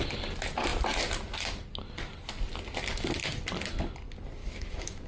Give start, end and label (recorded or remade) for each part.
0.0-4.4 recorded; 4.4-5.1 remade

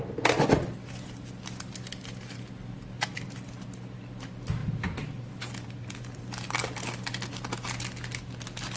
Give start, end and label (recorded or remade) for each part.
0.0-8.8 recorded

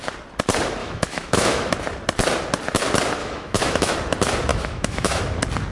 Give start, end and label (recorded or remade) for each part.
0.0-0.8 recorded; 0.8-1.7 remade; 1.7-3.2 recorded; 3.2-3.9 remade; 3.9-4.5 recorded; 4.5-5.2 remade; 5.2-5.7 recorded